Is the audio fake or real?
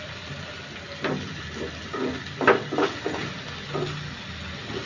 real